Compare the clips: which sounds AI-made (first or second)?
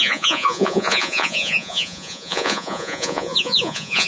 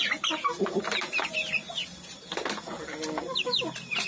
first